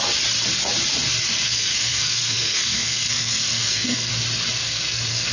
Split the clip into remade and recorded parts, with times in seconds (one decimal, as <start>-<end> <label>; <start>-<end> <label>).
0.0-1.3 recorded; 1.3-4.1 remade; 4.1-4.6 recorded; 4.6-5.3 remade